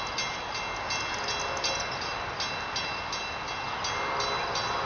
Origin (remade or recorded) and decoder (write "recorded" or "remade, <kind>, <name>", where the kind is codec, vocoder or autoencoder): recorded